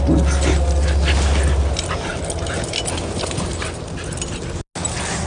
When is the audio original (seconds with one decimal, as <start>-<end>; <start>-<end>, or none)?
0.0-5.3